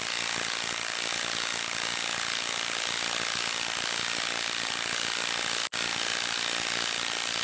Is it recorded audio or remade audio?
recorded